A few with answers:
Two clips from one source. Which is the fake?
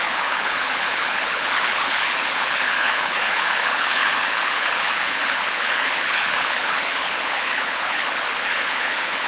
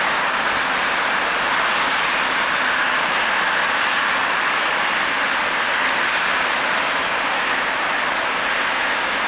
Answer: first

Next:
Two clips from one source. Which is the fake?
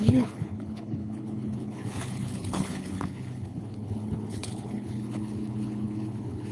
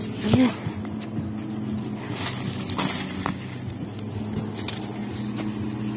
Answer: first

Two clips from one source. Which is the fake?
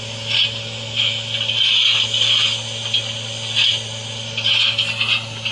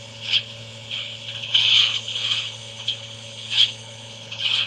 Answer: second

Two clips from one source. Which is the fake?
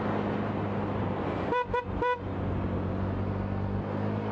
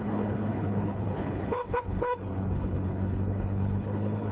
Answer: second